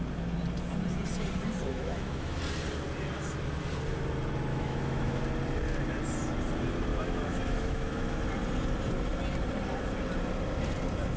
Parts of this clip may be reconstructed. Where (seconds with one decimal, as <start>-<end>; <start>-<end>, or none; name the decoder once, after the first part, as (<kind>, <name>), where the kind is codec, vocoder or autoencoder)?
1.7-2.4 (autoencoder, DAC-VAE); 4.5-5.2; 6.9-8.3